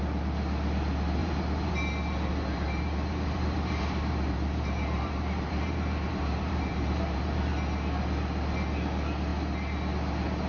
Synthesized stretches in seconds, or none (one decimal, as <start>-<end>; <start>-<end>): 1.2-1.7; 2.3-7.5